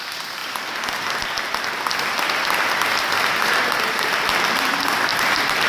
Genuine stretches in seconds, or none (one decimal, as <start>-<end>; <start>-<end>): 0.0-5.7